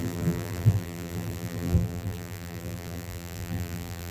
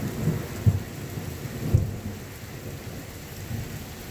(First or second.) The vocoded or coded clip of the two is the first